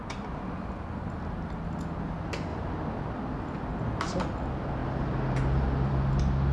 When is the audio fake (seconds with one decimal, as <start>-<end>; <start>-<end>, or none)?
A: none